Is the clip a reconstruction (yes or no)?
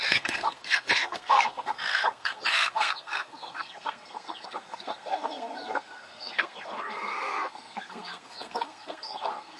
yes